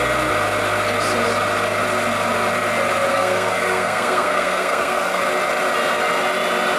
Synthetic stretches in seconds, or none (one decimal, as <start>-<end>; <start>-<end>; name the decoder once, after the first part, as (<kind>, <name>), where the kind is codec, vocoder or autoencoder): 3.1-5.2 (codec, SNAC)